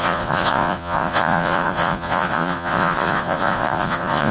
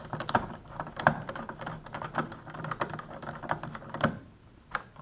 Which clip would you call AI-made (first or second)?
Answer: first